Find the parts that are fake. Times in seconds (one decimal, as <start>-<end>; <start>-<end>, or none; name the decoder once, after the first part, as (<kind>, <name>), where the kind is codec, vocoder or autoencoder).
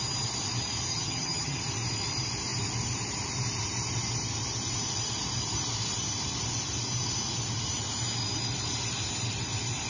0.9-1.6 (vocoder, HiFi-GAN)